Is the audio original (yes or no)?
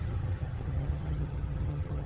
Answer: no